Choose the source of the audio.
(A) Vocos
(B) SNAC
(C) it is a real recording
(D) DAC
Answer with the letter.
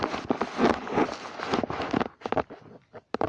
C